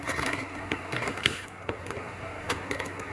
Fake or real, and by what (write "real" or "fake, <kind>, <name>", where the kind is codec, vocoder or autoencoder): fake, codec, SNAC